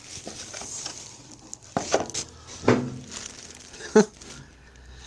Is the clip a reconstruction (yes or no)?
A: no